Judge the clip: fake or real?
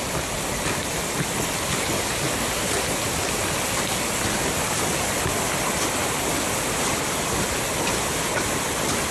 real